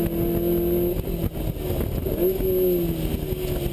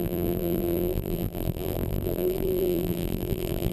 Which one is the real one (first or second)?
first